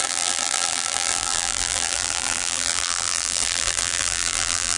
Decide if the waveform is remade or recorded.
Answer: remade